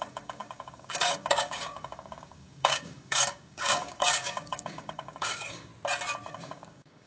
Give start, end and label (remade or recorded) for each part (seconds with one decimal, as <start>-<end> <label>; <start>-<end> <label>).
0.0-5.7 remade; 5.7-6.3 recorded; 6.3-7.1 remade